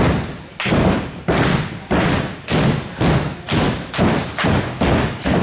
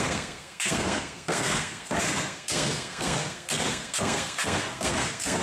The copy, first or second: second